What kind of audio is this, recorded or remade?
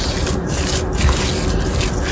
recorded